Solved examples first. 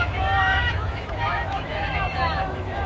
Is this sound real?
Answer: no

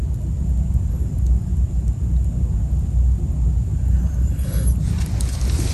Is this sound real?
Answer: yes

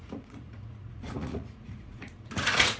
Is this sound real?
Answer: no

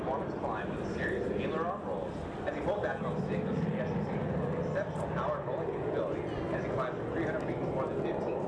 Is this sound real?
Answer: yes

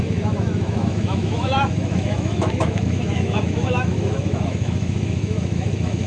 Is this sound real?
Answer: no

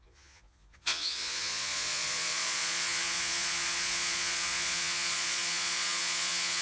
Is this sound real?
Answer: no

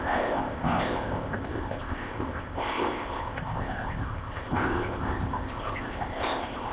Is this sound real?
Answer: no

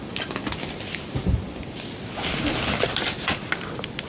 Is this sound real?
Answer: yes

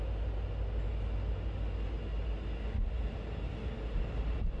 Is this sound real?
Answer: yes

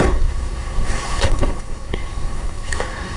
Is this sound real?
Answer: no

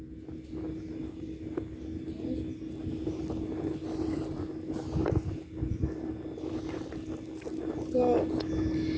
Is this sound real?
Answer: yes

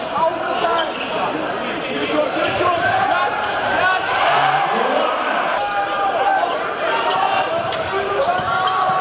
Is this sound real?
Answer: no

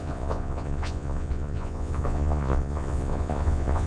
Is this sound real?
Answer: no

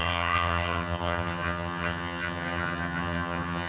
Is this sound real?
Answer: no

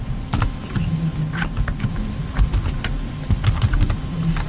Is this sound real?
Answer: yes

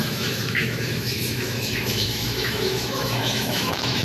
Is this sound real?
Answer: no